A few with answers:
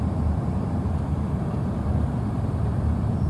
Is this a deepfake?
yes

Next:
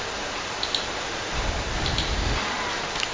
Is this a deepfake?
no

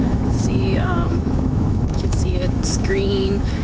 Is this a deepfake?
yes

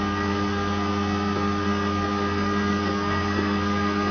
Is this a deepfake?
yes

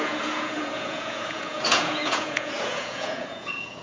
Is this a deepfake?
yes